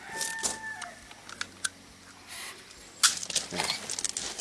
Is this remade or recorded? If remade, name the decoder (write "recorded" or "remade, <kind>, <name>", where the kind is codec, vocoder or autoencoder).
recorded